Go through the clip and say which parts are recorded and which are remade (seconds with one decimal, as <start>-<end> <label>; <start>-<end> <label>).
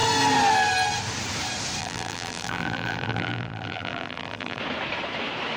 0.0-1.8 recorded; 1.8-4.6 remade; 4.6-5.6 recorded